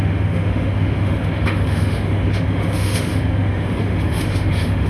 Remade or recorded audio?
remade